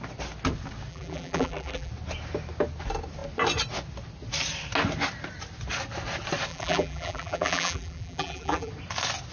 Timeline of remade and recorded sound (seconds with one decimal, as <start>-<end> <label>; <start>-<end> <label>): 0.0-0.9 recorded; 0.9-1.9 remade; 1.9-6.5 recorded; 6.5-8.7 remade; 8.7-9.3 recorded